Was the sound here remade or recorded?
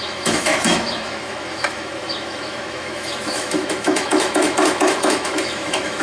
remade